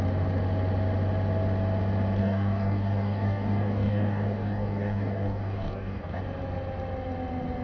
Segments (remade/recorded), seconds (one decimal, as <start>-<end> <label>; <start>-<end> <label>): 0.0-2.2 recorded; 2.2-6.2 remade; 6.2-7.6 recorded